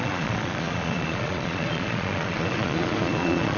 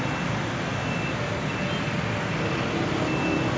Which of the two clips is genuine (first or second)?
second